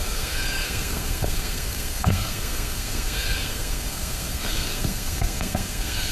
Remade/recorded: remade